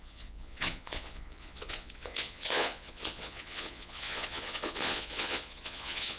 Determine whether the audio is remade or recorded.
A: remade